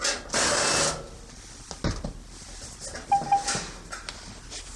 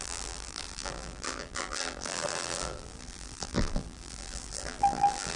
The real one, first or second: first